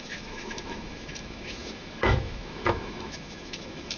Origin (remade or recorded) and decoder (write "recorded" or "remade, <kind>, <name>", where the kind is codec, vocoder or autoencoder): remade, autoencoder, DAC-VAE